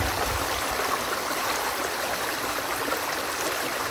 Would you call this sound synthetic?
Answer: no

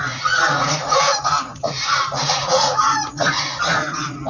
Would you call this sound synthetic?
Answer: yes